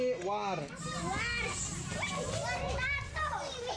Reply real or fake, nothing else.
real